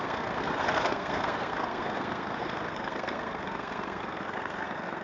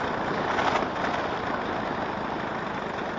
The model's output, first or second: first